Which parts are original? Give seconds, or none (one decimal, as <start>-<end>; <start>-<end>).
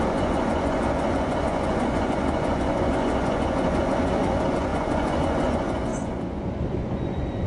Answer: none